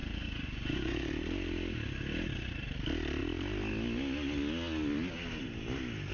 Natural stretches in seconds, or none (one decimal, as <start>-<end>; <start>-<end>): 1.1-6.1